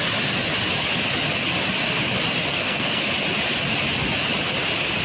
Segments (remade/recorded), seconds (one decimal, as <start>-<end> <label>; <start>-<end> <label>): 0.0-2.5 recorded; 2.5-3.1 remade; 3.1-5.0 recorded